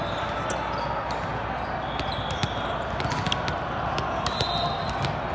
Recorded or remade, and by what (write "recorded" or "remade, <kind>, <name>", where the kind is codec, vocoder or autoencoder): recorded